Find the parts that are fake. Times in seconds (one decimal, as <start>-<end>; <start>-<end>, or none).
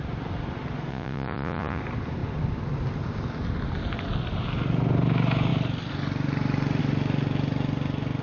0.9-1.8